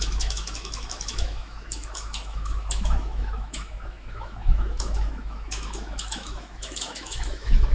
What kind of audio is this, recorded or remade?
remade